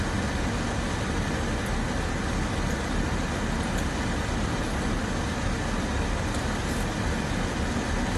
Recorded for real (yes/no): yes